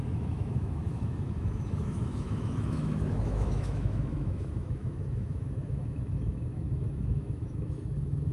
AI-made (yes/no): yes